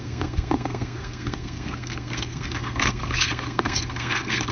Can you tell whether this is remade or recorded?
remade